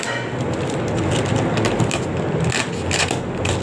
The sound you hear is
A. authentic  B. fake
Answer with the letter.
A